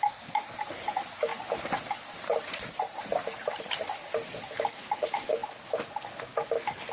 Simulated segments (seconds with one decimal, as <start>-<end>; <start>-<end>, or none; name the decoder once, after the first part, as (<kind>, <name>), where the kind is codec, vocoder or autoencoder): 1.3-1.8 (vocoder, BigVGAN v2); 2.3-4.0; 5.4-6.2